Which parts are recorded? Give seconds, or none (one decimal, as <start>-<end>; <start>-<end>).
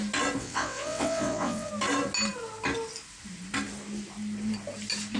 0.0-0.4; 1.7-5.2